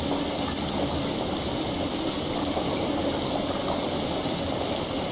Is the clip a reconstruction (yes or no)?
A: no